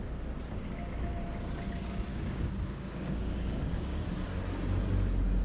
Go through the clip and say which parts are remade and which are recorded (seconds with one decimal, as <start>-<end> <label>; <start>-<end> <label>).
0.0-2.1 recorded; 2.1-4.0 remade; 4.0-5.4 recorded